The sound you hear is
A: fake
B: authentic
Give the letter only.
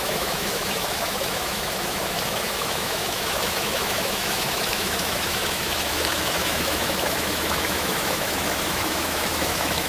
A